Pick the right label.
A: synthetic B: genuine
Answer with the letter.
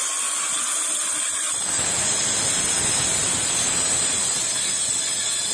B